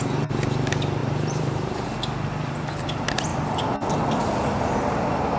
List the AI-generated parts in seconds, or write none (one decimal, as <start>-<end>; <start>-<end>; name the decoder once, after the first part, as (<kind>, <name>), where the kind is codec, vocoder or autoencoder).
1.0-1.9 (vocoder, BigVGAN v2)